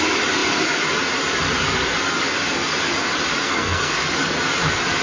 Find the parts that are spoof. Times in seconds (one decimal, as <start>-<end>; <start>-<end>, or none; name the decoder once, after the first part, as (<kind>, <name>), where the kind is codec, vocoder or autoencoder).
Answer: 3.4-3.9 (codec, SNAC)